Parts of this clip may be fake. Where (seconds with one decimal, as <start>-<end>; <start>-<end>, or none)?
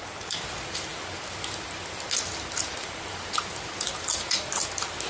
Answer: none